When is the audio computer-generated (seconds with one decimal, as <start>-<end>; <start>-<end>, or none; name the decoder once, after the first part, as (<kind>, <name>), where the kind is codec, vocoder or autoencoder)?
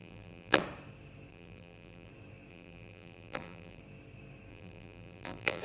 0.0-0.6 (vocoder, BigVGAN v2); 1.3-2.1; 2.5-3.8; 4.5-5.6